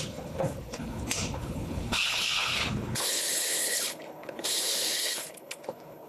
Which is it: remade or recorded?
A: remade